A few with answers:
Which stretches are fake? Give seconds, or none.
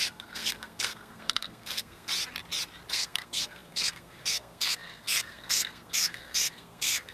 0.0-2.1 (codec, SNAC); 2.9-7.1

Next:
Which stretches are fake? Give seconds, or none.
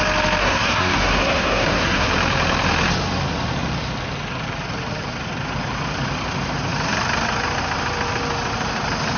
0.4-2.1 (codec, SNAC)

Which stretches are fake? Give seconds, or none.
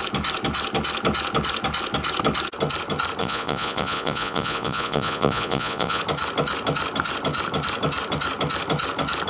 3.2-6.0 (vocoder, Vocos)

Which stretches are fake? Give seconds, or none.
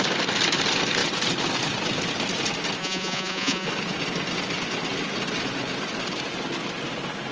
2.8-3.7 (vocoder, Vocos)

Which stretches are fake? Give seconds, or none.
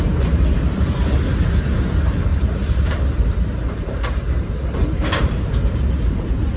2.3-6.6 (vocoder, BigVGAN v2)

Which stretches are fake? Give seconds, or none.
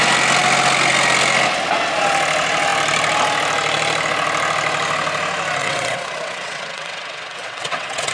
5.6-8.1 (vocoder, WaveNeXt)